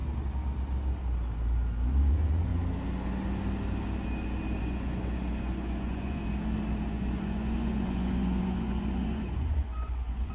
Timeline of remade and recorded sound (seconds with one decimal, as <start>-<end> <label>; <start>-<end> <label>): 0.0-2.1 recorded; 2.1-2.5 remade; 2.5-4.6 recorded; 4.6-6.2 remade; 6.2-6.9 recorded; 6.9-10.3 remade